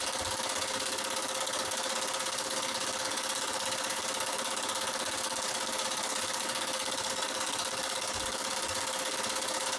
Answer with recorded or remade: remade